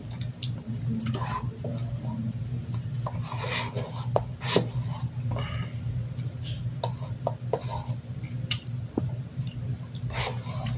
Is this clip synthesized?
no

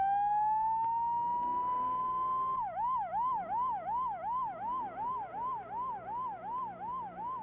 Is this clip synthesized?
no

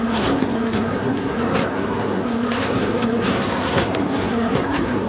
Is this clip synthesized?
yes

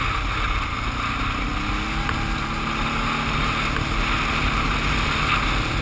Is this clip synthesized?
no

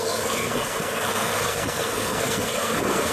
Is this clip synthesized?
yes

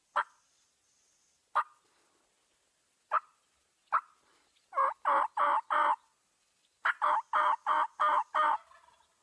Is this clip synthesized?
no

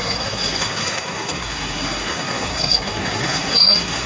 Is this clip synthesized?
yes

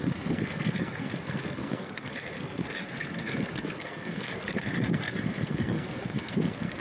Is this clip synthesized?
yes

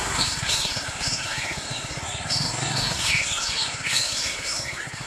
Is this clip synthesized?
yes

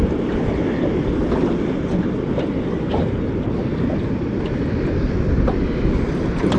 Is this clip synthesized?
no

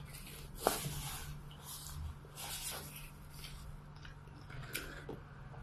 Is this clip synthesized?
no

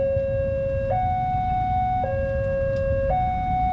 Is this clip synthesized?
no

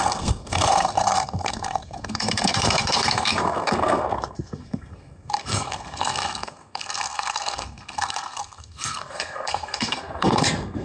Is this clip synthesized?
yes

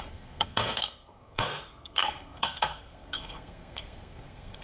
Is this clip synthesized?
yes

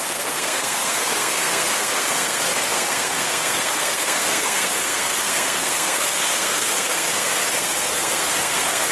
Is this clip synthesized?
yes